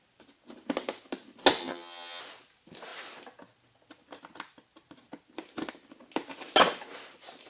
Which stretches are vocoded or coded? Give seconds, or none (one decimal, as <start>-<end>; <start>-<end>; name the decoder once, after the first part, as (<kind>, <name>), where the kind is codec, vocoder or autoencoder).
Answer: 1.6-2.2 (vocoder, HiFi-GAN)